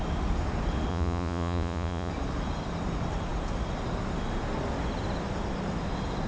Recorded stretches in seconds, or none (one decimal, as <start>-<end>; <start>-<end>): 0.0-0.9; 2.1-6.3